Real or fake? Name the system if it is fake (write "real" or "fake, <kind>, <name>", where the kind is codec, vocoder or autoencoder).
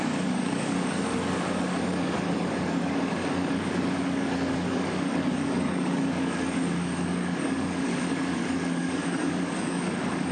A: fake, codec, DAC